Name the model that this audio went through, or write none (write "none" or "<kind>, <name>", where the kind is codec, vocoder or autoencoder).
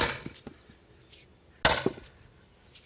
none